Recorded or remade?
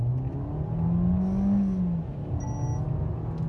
recorded